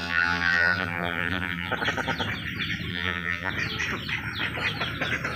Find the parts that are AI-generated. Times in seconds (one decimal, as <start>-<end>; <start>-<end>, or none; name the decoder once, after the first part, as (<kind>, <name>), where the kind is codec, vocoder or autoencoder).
0.0-1.7 (vocoder, BigVGAN v2); 2.9-3.5